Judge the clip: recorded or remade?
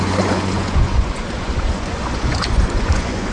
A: remade